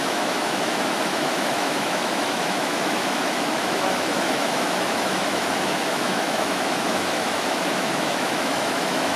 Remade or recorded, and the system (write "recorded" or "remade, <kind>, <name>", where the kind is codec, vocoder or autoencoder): remade, autoencoder, DAC-VAE